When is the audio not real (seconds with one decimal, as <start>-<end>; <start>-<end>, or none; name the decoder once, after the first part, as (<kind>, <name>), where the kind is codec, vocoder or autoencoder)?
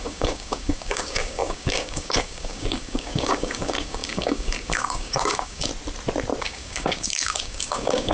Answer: 0.0-5.7 (codec, DAC); 6.4-8.1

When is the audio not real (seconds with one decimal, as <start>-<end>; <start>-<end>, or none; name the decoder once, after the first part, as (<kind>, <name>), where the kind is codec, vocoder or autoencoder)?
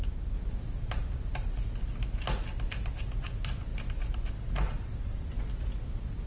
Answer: none